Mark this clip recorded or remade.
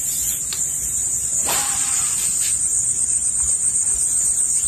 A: remade